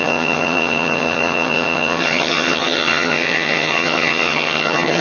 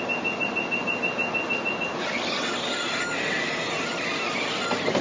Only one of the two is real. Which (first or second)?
second